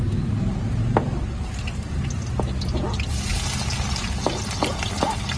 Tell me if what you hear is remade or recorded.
recorded